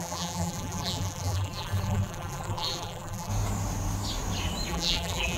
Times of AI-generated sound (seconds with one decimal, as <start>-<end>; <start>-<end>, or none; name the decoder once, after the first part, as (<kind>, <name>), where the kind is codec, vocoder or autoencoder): 0.0-3.3 (vocoder, BigVGAN v2); 4.7-5.4